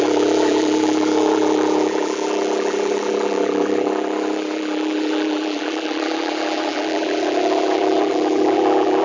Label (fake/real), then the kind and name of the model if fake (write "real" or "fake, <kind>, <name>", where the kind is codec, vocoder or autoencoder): fake, vocoder, BigVGAN v2